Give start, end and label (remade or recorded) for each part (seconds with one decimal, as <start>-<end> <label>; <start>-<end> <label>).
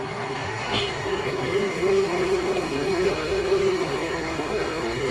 0.0-5.1 remade